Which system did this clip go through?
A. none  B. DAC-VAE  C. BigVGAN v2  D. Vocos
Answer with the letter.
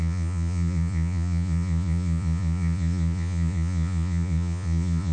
D